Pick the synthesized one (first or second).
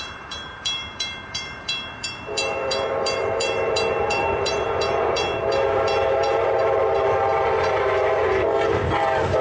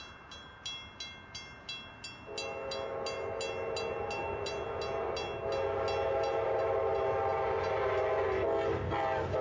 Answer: first